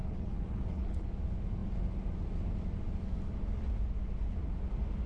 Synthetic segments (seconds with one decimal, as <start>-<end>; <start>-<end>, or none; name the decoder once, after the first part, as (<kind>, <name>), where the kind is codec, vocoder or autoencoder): 0.0-1.1 (codec, HILCodec)